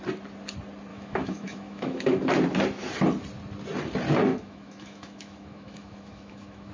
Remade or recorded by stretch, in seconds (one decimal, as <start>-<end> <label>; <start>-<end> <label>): 0.0-0.9 recorded; 0.9-2.3 remade; 2.3-4.3 recorded; 4.3-6.7 remade